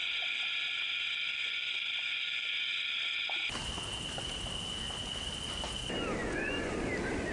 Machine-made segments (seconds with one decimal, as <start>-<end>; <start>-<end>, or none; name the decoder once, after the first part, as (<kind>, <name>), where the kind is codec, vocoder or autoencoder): 1.3-2.5 (vocoder, Vocos); 6.2-6.7